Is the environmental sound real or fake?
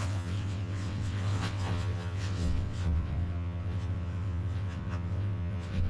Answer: fake